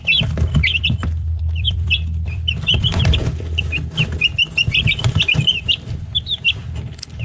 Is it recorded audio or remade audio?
remade